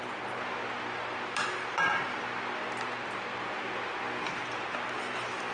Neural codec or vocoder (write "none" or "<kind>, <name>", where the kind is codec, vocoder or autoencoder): none